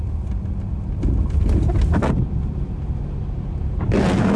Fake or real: real